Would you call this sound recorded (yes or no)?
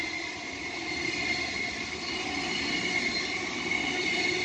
yes